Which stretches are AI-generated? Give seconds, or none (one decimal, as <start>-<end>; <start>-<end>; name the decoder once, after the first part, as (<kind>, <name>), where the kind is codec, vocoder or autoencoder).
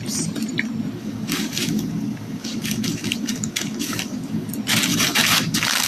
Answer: 1.0-4.5 (codec, DAC); 4.9-5.9